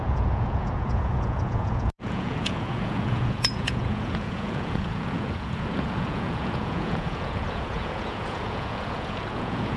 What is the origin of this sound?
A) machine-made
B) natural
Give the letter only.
A